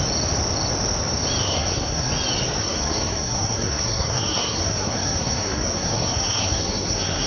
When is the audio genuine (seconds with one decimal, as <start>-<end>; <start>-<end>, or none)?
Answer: 0.0-1.4; 2.1-2.6